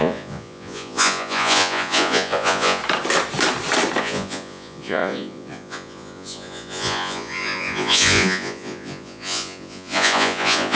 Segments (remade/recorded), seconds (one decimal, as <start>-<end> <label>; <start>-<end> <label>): 0.0-2.8 remade; 2.8-4.0 recorded; 4.0-10.8 remade